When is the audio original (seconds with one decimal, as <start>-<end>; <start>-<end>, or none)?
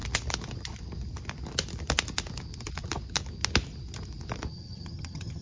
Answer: 0.0-4.5